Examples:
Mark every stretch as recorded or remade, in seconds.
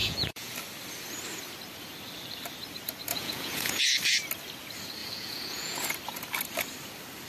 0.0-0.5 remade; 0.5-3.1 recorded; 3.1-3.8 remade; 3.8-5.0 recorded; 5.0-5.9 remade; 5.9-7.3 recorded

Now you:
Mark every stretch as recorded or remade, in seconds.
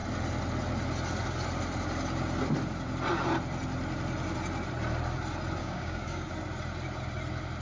0.0-5.6 recorded; 5.6-6.3 remade; 6.3-7.6 recorded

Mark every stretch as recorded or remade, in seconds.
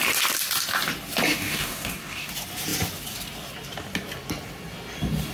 0.0-1.3 recorded; 1.3-2.3 remade; 2.3-5.3 recorded